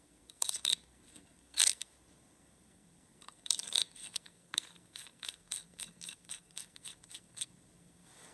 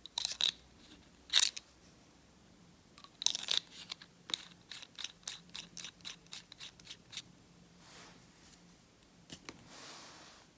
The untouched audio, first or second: second